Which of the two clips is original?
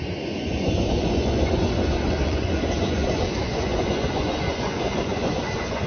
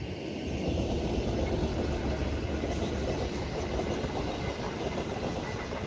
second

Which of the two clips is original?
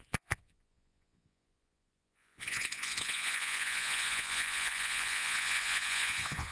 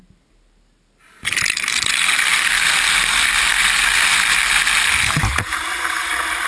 second